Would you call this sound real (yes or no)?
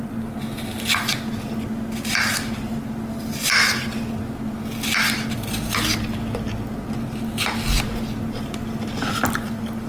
yes